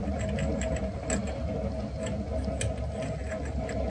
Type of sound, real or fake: real